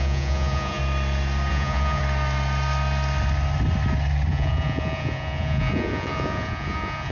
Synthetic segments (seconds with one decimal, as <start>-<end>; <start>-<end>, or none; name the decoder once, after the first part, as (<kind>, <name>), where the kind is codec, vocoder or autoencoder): 0.0-0.8 (vocoder, Vocos); 1.5-2.0; 4.3-7.1